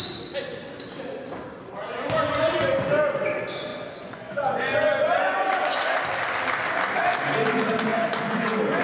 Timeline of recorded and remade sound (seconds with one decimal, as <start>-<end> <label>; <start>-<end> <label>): 0.0-3.7 recorded; 3.7-6.0 remade; 6.0-7.9 recorded; 7.9-8.8 remade